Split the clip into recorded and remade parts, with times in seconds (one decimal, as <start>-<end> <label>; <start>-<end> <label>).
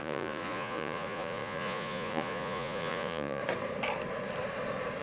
0.0-3.4 remade; 3.4-5.0 recorded